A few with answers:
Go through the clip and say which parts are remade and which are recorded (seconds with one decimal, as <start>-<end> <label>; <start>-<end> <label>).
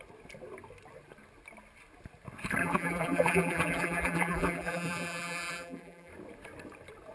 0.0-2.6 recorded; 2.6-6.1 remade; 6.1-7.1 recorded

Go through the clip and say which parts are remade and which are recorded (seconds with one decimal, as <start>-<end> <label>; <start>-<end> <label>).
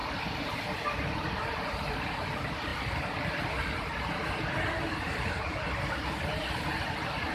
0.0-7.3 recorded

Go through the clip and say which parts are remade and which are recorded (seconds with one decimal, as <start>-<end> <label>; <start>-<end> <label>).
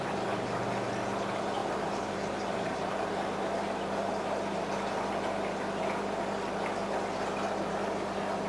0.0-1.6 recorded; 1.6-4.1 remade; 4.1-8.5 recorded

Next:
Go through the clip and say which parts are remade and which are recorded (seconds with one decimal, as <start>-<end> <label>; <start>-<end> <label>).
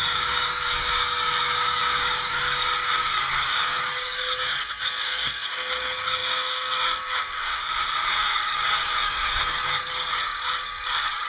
0.0-7.6 remade; 7.6-8.1 recorded; 8.1-11.3 remade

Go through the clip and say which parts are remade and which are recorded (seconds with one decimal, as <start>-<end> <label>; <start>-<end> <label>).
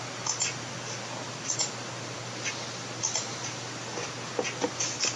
0.0-5.2 recorded